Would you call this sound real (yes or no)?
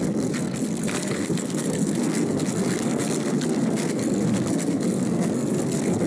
no